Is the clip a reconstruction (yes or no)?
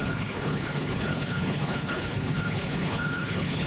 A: yes